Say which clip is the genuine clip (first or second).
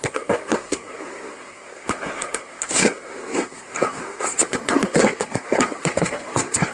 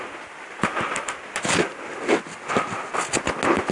second